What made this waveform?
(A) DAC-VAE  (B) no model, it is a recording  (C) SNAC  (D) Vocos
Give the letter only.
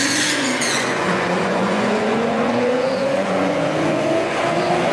D